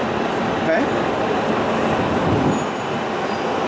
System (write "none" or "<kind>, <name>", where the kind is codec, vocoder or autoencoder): none